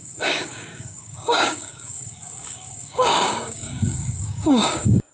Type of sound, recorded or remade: remade